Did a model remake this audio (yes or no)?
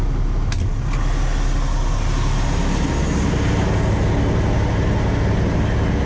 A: no